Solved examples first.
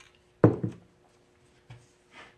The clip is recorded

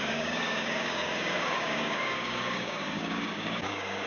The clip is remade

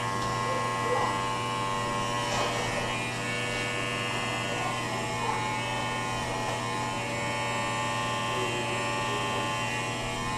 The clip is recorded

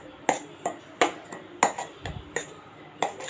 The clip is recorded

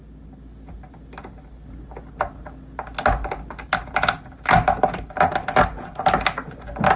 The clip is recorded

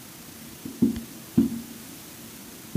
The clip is recorded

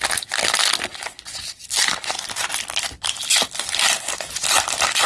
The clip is recorded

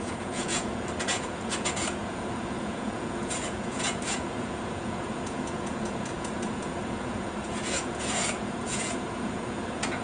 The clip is remade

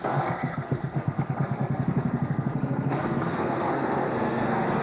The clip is remade